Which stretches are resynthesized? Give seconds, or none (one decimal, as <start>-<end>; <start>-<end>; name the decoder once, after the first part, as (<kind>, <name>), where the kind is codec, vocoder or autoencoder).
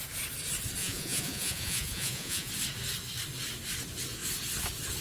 0.8-2.5 (vocoder, Vocos)